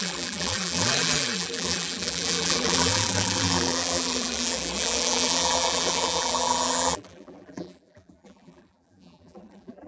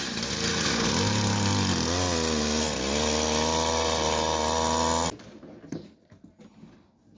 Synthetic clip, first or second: first